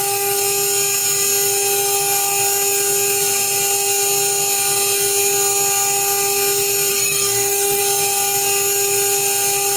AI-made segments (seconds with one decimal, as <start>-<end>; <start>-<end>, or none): 6.9-7.8